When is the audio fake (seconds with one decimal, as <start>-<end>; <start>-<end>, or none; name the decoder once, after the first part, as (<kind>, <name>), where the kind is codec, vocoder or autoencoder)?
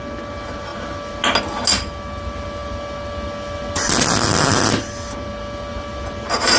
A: none